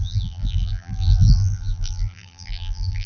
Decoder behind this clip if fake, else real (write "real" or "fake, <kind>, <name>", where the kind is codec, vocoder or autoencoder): fake, vocoder, BigVGAN v2